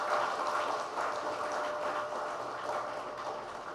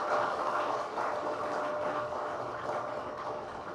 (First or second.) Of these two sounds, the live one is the first